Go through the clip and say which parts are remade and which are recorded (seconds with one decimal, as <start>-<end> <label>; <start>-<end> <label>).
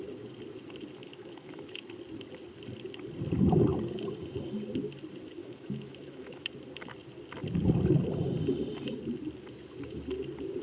0.0-1.0 recorded; 1.0-1.9 remade; 1.9-5.4 recorded; 5.4-6.5 remade; 6.5-10.6 recorded